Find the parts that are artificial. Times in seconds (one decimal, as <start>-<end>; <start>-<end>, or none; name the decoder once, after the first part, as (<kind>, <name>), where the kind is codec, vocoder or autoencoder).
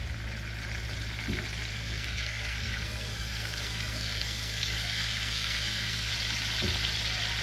1.7-6.1 (codec, SNAC)